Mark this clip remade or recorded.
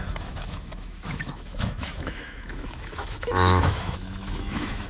remade